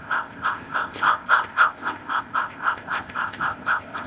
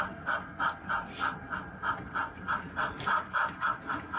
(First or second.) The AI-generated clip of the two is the first